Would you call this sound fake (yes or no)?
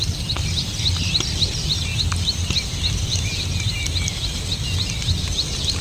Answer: yes